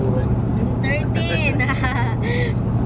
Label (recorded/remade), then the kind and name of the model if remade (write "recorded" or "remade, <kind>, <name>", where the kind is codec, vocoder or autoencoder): recorded